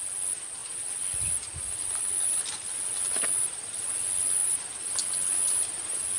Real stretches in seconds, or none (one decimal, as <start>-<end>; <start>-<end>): 0.0-6.2